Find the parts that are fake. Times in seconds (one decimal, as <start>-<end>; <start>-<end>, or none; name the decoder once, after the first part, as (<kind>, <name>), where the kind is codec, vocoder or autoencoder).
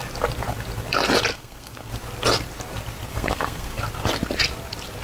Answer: 1.3-1.9 (codec, SNAC); 3.1-3.8